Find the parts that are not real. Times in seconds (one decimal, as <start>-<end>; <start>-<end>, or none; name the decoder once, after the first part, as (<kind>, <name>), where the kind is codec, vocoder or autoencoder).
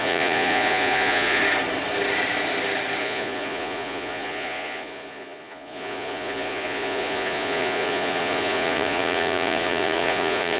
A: 0.0-1.4 (vocoder, Vocos); 3.0-10.6